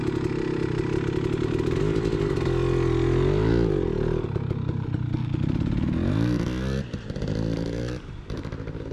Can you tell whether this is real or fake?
real